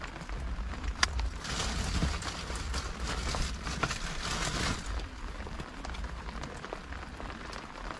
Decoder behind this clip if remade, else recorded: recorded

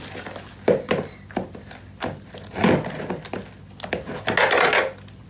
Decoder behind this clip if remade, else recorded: recorded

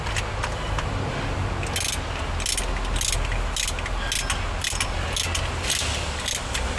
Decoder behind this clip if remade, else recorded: recorded